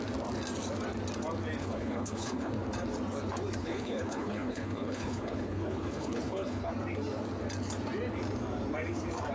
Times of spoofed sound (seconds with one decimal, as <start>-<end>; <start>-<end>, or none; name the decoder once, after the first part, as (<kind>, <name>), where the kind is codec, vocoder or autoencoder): 1.6-2.5 (codec, HILCodec); 3.6-6.7